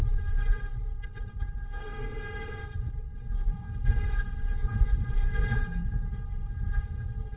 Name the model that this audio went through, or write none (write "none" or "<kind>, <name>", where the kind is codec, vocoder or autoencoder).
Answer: codec, SNAC